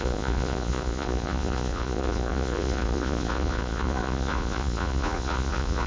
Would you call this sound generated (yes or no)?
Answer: yes